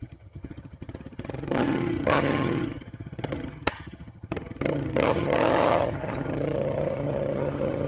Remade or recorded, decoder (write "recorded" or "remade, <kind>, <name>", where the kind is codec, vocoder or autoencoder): remade, vocoder, HiFi-GAN